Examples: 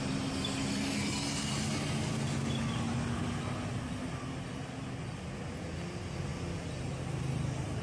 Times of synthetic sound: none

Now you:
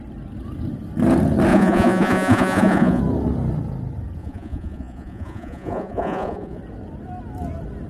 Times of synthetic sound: 1.5-3.0 (vocoder, Vocos); 4.2-6.6

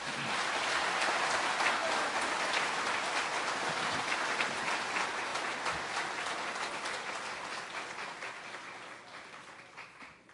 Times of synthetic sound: none

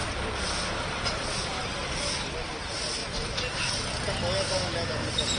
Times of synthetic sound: 3.0-3.9 (vocoder, BigVGAN v2)

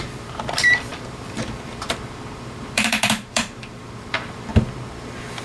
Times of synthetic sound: 0.0-4.5 (vocoder, BigVGAN v2)

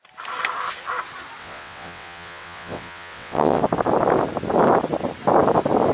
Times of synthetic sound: 1.4-3.6 (vocoder, WaveNeXt)